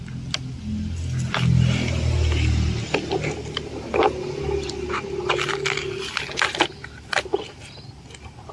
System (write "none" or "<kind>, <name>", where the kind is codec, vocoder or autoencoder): none